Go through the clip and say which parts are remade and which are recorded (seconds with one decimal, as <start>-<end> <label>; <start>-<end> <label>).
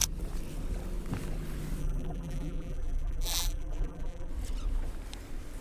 0.0-1.8 recorded; 1.8-4.3 remade; 4.3-5.6 recorded